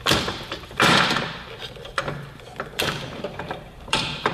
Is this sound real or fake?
fake